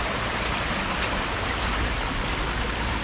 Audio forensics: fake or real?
real